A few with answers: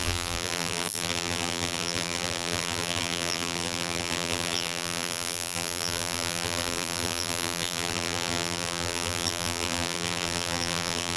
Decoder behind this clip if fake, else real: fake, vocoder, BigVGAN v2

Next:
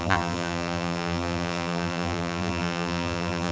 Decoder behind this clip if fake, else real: fake, vocoder, BigVGAN v2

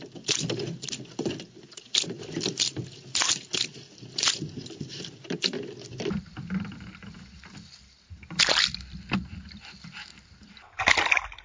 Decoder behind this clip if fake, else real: real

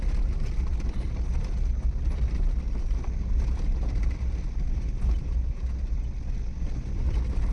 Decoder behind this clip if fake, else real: real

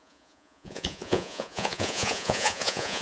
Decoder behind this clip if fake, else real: fake, vocoder, Vocos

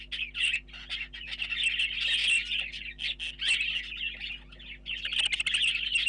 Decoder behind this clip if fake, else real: real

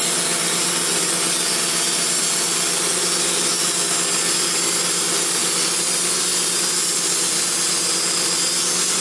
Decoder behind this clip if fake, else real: real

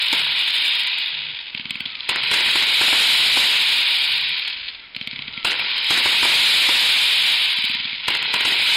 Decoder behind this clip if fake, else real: real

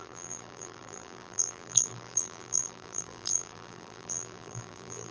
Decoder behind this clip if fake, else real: fake, vocoder, BigVGAN v2